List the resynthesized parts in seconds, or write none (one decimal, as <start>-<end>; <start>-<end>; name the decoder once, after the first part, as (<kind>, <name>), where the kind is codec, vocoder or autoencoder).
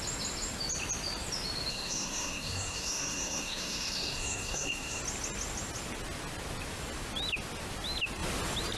1.7-5.0 (codec, SNAC)